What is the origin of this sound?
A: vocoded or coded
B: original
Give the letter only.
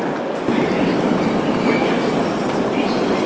B